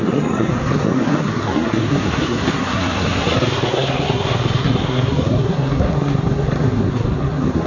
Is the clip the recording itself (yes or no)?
no